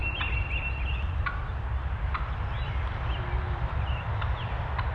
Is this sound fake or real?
real